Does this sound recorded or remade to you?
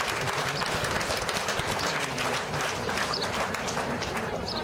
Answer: remade